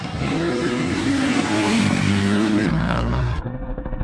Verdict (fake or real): fake